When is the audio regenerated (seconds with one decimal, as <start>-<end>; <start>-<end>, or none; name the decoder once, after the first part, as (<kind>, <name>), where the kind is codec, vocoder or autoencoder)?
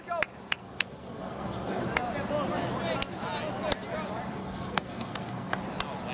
0.6-1.8 (codec, SNAC); 4.4-5.5